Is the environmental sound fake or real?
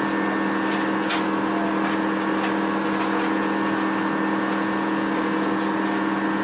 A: real